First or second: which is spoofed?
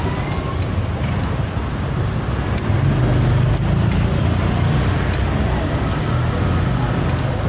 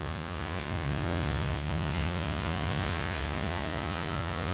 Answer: second